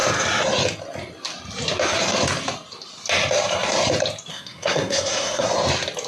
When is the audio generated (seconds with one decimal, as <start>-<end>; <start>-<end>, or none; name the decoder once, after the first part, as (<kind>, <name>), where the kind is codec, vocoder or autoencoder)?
4.3-5.5 (codec, SNAC)